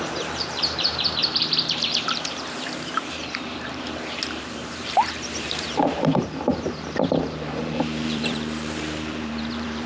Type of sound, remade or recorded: remade